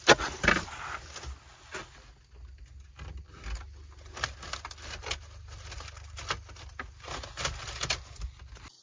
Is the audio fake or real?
real